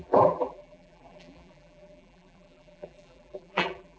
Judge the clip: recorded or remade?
remade